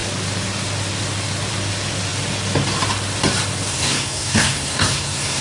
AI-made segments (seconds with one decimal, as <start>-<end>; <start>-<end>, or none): 3.7-5.4